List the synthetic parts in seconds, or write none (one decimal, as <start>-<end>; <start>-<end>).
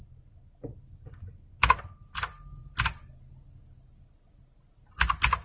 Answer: none